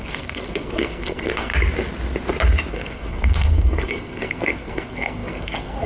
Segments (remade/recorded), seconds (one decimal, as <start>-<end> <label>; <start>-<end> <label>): 0.0-1.5 remade; 1.5-2.7 recorded; 2.7-5.9 remade